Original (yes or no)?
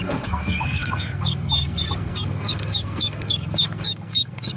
no